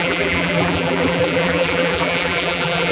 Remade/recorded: remade